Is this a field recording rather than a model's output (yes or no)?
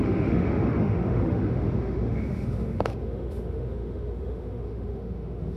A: no